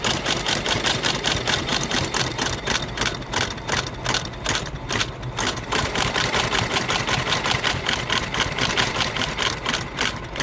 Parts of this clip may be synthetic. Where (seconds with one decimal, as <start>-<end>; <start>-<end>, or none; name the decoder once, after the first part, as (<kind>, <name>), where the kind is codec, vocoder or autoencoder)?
none